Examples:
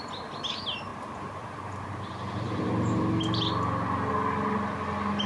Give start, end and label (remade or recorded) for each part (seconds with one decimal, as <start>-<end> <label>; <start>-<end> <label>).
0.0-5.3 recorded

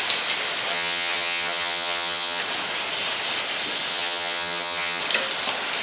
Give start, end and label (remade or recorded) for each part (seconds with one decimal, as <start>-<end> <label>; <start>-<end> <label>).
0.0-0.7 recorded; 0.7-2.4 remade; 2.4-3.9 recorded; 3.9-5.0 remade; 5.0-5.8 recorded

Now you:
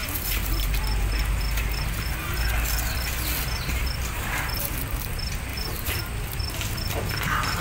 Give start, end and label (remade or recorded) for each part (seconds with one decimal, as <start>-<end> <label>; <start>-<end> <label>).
0.0-5.5 recorded; 5.5-6.0 remade; 6.0-7.6 recorded

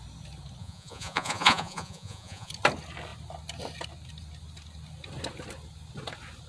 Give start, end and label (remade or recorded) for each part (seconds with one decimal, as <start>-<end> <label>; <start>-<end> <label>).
0.0-0.6 recorded; 0.6-2.5 remade; 2.5-6.5 recorded

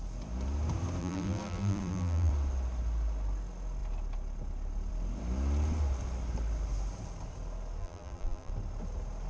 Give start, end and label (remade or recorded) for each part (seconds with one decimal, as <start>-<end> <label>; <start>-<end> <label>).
0.0-1.0 recorded; 1.0-2.3 remade; 2.3-7.8 recorded; 7.8-8.5 remade; 8.5-9.3 recorded

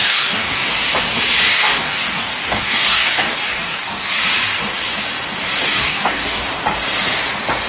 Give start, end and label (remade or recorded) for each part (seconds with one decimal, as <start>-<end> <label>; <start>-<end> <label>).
0.0-0.7 remade; 0.7-1.5 recorded; 1.5-4.2 remade; 4.2-5.6 recorded; 5.6-6.4 remade; 6.4-7.7 recorded